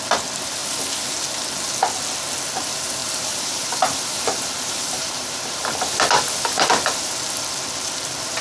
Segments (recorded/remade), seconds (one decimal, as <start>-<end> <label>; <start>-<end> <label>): 0.0-3.0 recorded; 3.0-5.6 remade; 5.6-8.4 recorded